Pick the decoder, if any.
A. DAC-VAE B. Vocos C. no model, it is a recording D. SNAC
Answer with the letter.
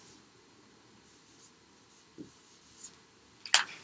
C